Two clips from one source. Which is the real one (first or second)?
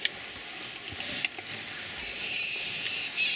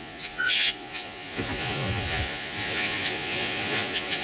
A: first